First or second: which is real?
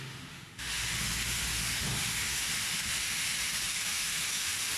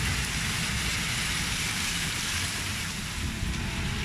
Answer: second